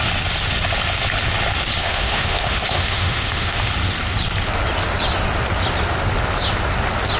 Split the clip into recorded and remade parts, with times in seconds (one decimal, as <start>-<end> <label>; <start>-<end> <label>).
0.0-1.8 recorded; 1.8-3.7 remade; 3.7-7.2 recorded